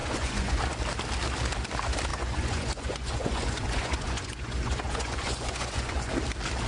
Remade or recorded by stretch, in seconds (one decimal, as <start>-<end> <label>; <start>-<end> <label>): 0.0-0.6 remade; 0.6-2.1 recorded; 2.1-6.1 remade; 6.1-6.7 recorded